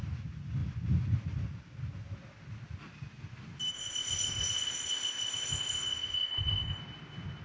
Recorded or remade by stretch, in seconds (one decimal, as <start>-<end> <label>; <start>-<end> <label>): 0.0-3.7 recorded; 3.7-6.8 remade; 6.8-7.4 recorded